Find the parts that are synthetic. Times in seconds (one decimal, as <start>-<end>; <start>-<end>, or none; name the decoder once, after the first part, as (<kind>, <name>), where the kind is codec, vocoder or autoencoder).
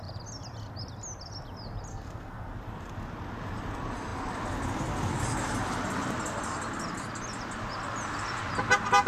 1.9-2.5 (codec, SNAC)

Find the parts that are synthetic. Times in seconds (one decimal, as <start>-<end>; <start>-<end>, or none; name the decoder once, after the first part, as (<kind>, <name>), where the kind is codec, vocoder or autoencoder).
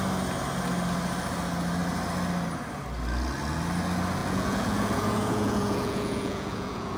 4.2-7.0 (vocoder, Vocos)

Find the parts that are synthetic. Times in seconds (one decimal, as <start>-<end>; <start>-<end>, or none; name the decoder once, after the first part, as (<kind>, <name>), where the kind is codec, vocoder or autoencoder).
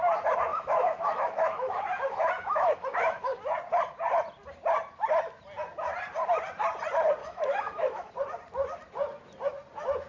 0.5-3.4 (autoencoder, DAC-VAE); 7.2-8.1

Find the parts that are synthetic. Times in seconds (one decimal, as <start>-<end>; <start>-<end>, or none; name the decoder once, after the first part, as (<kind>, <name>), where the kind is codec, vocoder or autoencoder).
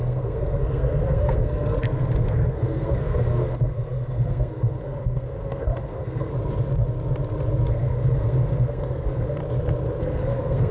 0.0-6.3 (codec, SNAC); 7.7-9.4; 10.0-10.7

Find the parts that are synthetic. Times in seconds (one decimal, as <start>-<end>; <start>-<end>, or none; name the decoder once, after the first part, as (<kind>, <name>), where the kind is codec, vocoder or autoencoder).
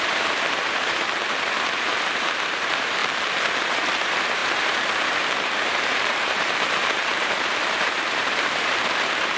0.0-3.0 (vocoder, BigVGAN v2); 3.6-9.4